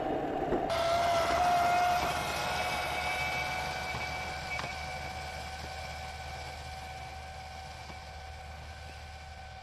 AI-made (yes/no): no